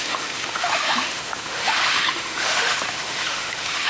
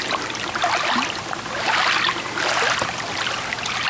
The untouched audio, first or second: second